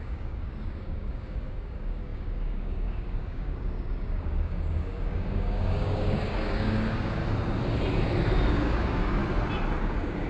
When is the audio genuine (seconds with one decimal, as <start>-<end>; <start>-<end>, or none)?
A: 7.2-8.5; 9.2-9.8

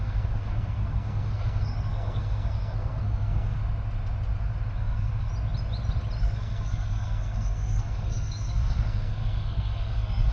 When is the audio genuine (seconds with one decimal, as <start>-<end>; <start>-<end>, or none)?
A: 3.6-4.8; 5.3-6.2

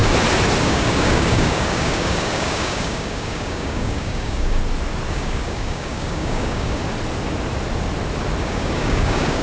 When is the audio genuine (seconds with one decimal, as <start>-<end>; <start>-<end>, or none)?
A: 0.0-0.6; 4.6-5.1; 6.8-8.4

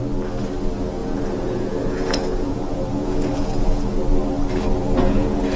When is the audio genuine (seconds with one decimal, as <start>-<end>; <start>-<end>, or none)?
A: 0.0-1.0; 4.0-4.8

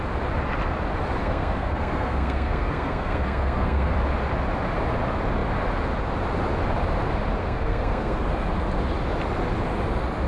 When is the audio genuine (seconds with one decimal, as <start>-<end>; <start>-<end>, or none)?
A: 0.0-1.2; 3.9-7.4; 8.2-10.3

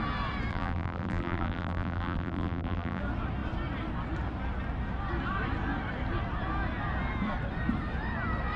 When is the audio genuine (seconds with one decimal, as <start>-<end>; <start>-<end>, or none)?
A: 0.0-0.5; 3.0-8.6